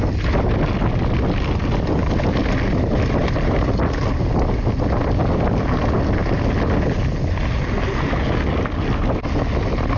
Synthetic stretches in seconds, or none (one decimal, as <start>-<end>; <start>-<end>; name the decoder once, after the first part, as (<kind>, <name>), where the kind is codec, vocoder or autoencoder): none